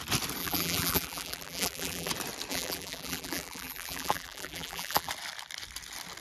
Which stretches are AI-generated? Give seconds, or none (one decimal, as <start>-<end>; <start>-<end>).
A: 0.4-2.1; 2.5-5.1